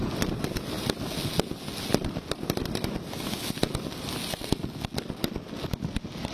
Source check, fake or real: real